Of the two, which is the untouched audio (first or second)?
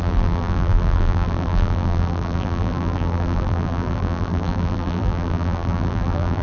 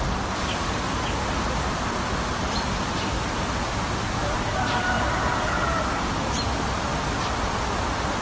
second